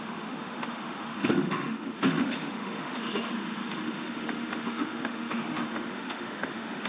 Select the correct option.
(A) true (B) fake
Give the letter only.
B